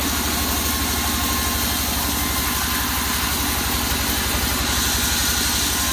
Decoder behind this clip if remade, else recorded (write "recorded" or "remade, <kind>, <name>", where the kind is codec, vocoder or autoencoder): recorded